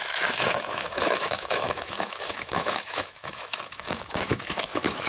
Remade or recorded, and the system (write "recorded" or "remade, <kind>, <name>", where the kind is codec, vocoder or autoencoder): remade, autoencoder, DAC-VAE